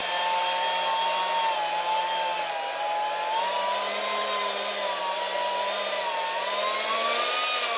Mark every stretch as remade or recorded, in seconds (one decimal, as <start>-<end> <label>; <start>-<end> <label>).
0.0-7.8 recorded